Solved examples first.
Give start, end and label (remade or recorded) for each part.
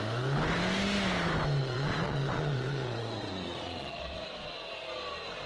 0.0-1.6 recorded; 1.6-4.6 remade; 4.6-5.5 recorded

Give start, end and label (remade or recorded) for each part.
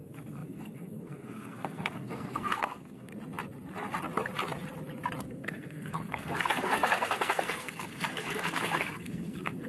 0.0-3.1 remade; 3.1-5.2 recorded; 5.2-9.7 remade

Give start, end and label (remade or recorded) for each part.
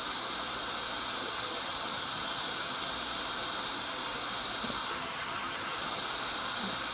0.0-1.2 recorded; 1.2-2.9 remade; 2.9-4.8 recorded; 4.8-6.0 remade; 6.0-6.9 recorded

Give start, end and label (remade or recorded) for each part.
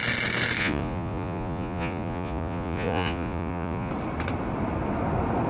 0.0-0.6 recorded; 0.6-3.9 remade; 3.9-5.5 recorded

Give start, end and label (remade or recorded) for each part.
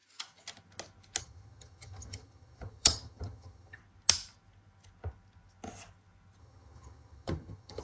0.0-1.2 recorded; 1.2-3.8 remade; 3.8-6.4 recorded; 6.4-7.8 remade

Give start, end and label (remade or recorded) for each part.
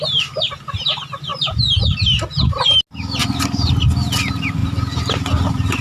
0.0-1.3 recorded; 1.3-1.8 remade; 1.8-3.2 recorded; 3.2-3.7 remade; 3.7-4.6 recorded; 4.6-5.8 remade